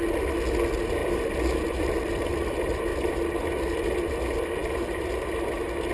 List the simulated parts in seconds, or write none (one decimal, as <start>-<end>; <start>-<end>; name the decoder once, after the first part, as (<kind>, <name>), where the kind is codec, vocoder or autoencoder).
none